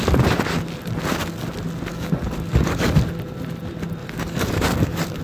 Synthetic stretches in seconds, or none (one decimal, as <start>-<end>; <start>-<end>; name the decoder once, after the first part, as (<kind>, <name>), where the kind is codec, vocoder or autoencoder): 1.9-3.0 (codec, DAC); 4.0-5.2